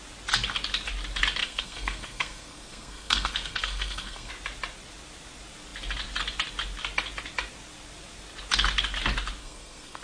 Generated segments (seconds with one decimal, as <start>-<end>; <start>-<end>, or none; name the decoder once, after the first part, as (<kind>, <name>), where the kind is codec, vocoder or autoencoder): 1.4-4.3 (codec, SNAC); 9.4-10.0